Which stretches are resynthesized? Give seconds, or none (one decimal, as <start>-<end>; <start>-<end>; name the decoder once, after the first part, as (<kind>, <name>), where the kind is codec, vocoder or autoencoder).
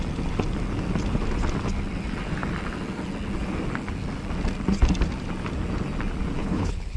6.4-7.0 (codec, HILCodec)